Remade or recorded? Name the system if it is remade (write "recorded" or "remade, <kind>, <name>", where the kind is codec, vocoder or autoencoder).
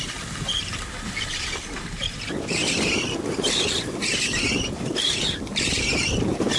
remade, vocoder, BigVGAN v2